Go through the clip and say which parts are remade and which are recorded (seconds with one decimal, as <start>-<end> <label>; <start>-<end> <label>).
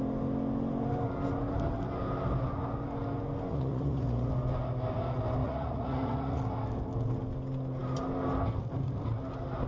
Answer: 0.0-3.5 recorded; 3.5-4.3 remade; 4.3-5.4 recorded; 5.4-6.4 remade; 6.4-9.7 recorded